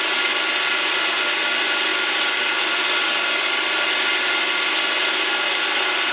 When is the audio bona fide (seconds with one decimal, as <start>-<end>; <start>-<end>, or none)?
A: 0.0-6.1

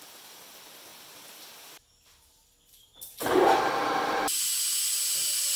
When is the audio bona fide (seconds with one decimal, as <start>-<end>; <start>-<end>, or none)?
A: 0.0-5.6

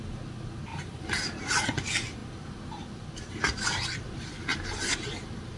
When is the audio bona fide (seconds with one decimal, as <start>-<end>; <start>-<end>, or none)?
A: 0.0-0.7; 1.5-4.5; 5.1-5.6

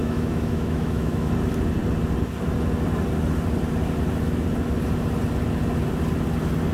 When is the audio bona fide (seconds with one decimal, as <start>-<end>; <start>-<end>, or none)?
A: 1.3-6.7